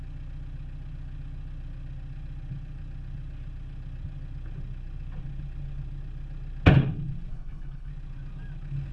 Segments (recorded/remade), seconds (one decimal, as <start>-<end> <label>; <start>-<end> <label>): 0.0-7.3 recorded; 7.3-7.9 remade; 7.9-8.9 recorded